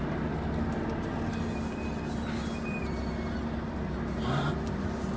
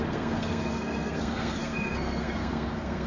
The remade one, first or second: second